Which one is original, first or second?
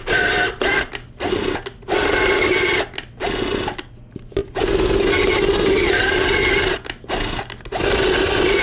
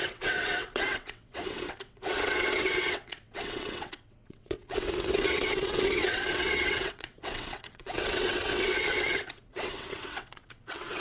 first